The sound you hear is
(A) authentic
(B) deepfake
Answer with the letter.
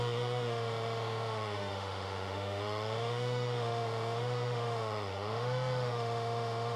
B